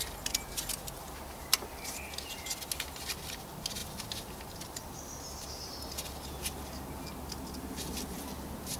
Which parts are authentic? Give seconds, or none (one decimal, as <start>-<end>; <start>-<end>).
0.0-8.8